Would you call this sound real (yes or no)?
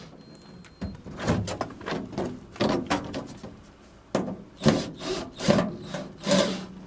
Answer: yes